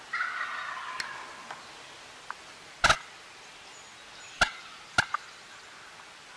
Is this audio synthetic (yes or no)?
no